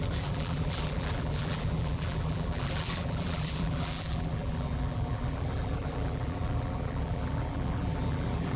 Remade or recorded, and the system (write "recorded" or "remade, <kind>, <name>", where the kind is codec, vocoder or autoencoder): remade, vocoder, BigVGAN v2